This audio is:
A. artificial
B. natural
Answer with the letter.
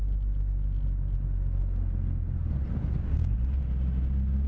B